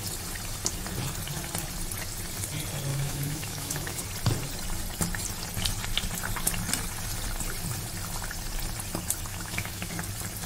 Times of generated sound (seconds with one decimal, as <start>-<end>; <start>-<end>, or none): 2.9-4.0; 9.3-9.9